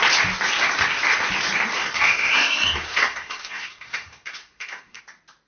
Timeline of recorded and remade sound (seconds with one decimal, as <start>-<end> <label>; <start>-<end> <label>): 0.0-1.8 recorded; 1.8-5.0 remade; 5.0-5.5 recorded